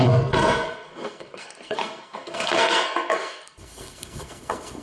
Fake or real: fake